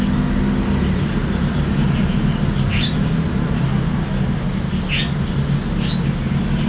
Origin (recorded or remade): recorded